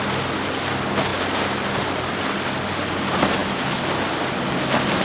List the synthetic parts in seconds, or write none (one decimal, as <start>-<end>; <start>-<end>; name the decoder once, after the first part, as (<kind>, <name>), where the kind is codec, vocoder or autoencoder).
none